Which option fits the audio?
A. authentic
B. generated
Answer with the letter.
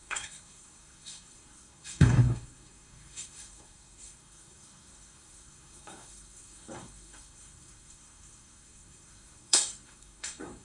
B